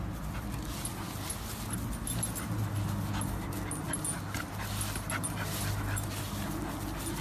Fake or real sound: real